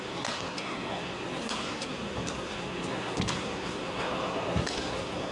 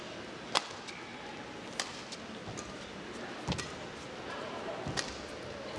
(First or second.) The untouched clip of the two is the second